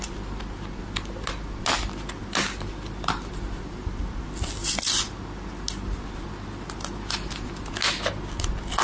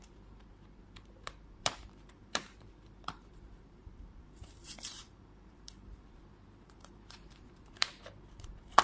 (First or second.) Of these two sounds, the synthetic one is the second